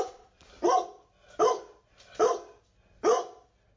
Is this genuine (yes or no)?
yes